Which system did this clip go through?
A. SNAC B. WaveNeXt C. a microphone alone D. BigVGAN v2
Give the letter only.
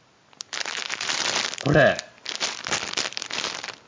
C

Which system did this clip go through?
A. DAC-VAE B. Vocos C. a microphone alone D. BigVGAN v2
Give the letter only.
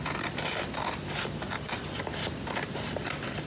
C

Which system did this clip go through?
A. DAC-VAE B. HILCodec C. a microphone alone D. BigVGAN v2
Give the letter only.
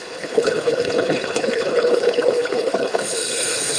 B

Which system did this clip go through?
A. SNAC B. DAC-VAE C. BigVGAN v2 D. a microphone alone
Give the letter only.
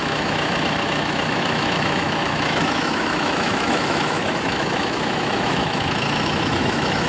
B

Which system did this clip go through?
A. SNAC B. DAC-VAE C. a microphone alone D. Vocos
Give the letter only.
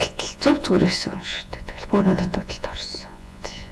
D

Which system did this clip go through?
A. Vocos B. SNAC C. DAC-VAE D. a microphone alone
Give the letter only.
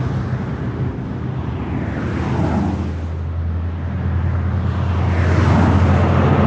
D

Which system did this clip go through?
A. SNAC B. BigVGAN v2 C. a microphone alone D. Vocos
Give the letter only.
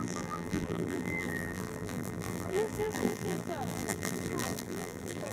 B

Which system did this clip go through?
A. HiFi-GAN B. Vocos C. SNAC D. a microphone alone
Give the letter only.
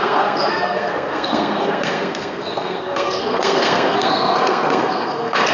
C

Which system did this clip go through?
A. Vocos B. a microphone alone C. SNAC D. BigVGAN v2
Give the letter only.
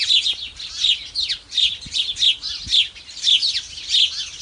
B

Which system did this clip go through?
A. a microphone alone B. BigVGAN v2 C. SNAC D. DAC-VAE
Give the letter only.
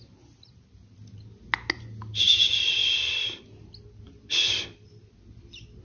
A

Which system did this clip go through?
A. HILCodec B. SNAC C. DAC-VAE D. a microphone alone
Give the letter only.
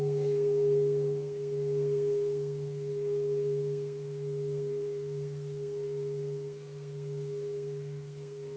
B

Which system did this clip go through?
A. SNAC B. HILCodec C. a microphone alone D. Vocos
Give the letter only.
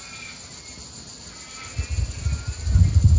C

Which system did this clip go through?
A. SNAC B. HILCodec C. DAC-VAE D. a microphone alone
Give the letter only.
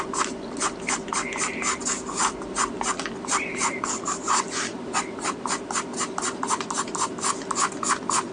D